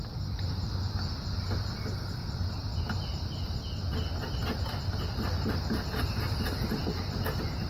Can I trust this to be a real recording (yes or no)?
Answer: yes